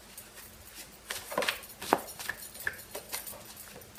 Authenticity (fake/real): real